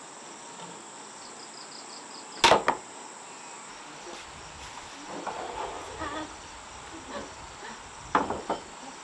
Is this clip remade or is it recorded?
recorded